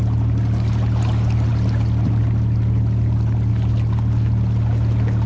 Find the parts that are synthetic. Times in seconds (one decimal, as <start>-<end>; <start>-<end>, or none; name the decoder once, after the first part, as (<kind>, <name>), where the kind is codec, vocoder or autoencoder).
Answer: none